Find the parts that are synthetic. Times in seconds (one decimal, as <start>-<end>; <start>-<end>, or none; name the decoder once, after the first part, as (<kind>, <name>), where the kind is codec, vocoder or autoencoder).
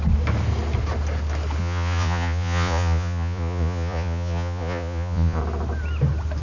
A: 1.6-5.4 (vocoder, Vocos)